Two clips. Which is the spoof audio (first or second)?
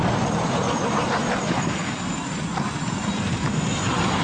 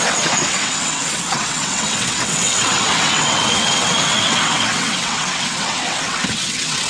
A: second